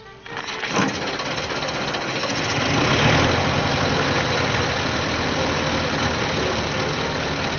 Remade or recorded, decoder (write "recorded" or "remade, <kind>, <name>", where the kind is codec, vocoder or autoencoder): recorded